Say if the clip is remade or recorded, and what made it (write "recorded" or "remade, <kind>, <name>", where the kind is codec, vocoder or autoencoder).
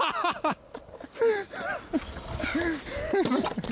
recorded